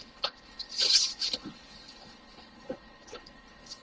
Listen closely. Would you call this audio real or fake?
fake